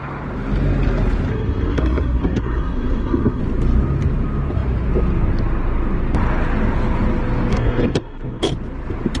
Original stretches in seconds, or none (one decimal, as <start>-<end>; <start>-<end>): 0.0-1.3; 3.4-7.5; 8.4-9.2